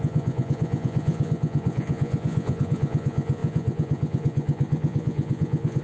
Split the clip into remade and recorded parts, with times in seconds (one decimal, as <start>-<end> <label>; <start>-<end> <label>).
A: 0.0-5.8 remade